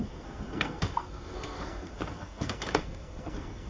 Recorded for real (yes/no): no